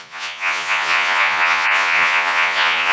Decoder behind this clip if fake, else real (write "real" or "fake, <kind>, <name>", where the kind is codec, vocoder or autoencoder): fake, vocoder, Vocos